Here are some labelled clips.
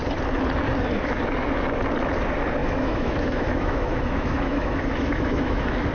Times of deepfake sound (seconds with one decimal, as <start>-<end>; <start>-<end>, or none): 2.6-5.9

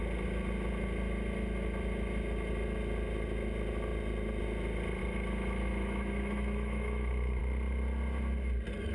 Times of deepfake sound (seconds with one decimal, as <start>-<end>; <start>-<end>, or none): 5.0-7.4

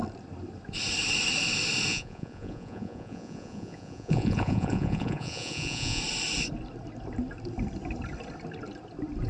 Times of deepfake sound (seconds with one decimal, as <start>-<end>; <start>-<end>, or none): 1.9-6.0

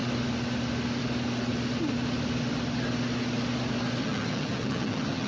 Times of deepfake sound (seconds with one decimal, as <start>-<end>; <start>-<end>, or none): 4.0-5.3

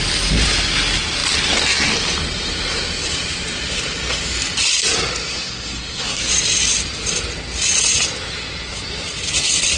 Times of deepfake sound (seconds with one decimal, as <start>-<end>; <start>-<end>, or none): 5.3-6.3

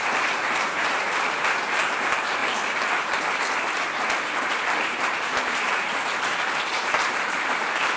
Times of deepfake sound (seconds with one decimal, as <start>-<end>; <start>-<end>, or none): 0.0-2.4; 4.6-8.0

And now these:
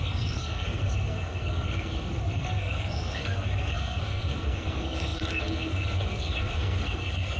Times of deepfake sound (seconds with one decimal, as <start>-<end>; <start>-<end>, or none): 0.0-7.4